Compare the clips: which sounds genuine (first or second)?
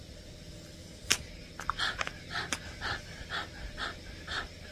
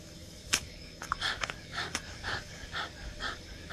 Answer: first